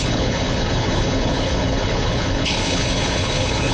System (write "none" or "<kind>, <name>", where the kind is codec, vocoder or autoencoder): codec, HILCodec